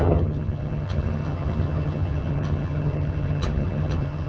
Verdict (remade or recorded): remade